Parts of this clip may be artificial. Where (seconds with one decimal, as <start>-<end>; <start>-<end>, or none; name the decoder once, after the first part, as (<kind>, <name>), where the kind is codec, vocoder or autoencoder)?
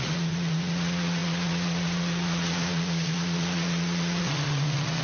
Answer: 0.0-5.0 (vocoder, Vocos)